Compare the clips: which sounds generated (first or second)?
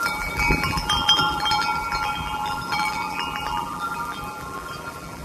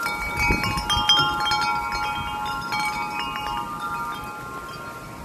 first